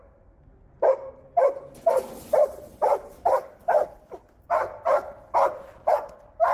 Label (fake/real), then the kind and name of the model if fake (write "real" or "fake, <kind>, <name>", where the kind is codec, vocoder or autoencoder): real